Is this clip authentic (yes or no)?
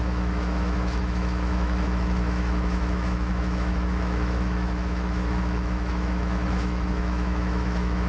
no